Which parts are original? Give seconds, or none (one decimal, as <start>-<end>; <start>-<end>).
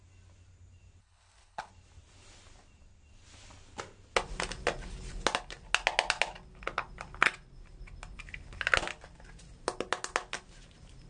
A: 0.0-1.0; 1.7-11.1